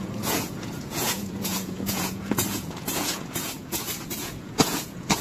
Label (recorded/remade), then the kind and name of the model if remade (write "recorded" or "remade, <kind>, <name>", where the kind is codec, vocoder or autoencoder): remade, vocoder, Vocos